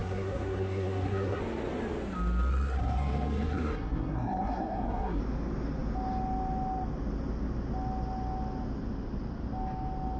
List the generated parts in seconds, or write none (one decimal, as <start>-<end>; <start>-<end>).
0.0-1.4; 2.5-5.2